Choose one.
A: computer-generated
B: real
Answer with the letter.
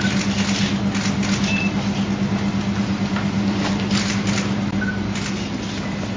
B